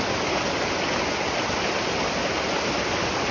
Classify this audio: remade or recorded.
recorded